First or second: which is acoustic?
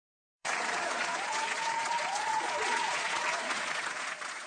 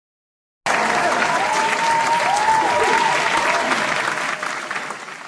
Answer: second